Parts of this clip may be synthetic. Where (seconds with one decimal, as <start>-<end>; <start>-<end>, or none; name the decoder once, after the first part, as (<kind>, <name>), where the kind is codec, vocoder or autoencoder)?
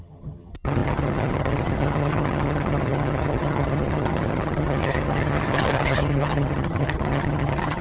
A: 0.0-7.8 (vocoder, HiFi-GAN)